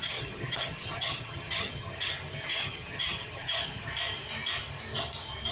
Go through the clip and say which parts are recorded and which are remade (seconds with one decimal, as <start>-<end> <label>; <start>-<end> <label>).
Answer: 0.0-2.1 remade; 2.1-2.5 recorded; 2.5-3.9 remade; 3.9-5.5 recorded